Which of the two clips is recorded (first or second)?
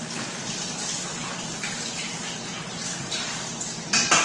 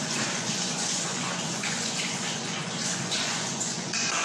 first